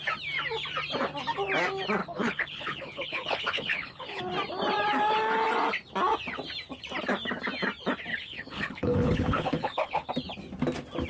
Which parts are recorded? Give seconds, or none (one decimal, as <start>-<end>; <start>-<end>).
0.0-2.0; 4.2-8.1; 10.1-11.1